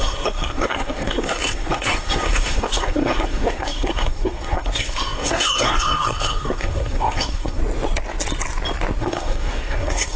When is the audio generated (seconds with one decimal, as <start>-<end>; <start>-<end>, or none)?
0.0-7.6; 9.0-10.2